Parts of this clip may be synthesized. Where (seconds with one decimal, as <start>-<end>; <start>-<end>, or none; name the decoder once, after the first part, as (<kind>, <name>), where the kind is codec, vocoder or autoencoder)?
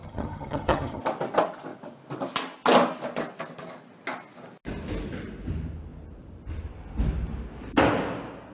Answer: 0.0-1.0 (vocoder, HiFi-GAN)